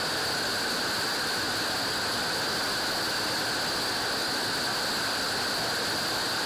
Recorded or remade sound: recorded